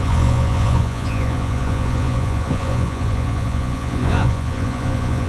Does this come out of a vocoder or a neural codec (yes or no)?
yes